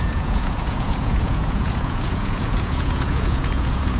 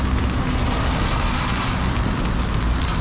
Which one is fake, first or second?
first